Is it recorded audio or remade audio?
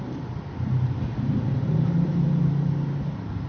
recorded